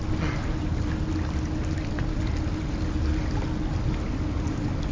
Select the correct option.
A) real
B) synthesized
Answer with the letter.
A